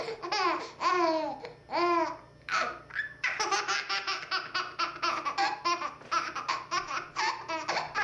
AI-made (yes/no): no